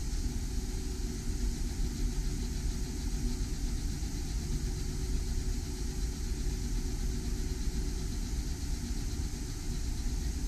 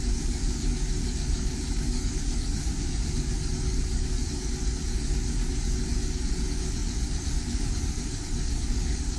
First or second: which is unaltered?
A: first